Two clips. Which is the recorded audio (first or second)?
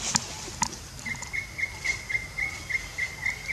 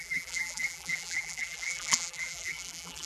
first